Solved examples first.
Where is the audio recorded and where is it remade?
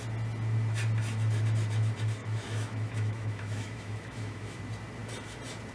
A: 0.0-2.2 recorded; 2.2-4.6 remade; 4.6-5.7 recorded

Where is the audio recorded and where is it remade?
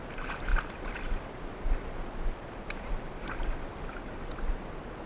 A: 0.0-5.1 recorded